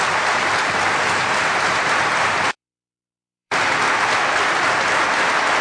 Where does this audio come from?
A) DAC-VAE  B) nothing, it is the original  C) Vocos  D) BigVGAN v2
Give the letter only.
D